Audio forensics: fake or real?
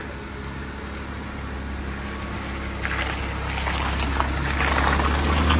real